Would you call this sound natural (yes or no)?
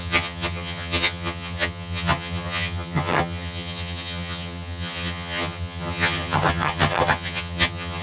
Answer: no